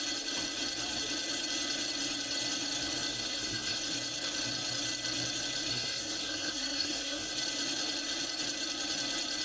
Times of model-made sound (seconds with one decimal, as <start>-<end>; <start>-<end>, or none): 3.1-3.8; 5.7-7.3

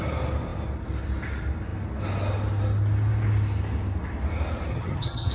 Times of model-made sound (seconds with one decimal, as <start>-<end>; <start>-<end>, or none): 4.7-5.3

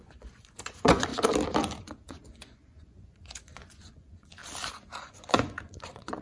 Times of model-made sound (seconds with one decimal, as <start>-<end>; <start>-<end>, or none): 0.0-1.1; 1.8-4.4; 5.0-6.2

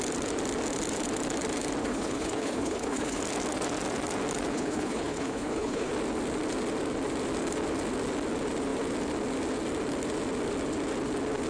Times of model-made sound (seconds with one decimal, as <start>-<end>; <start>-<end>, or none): 1.8-3.2; 4.5-5.9

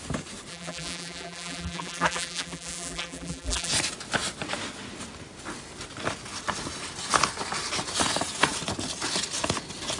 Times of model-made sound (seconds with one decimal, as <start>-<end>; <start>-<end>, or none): 0.5-3.7

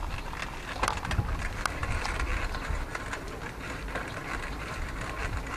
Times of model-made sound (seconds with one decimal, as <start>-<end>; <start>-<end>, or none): none